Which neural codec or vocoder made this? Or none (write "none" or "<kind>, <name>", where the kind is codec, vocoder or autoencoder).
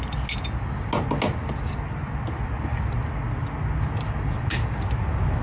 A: none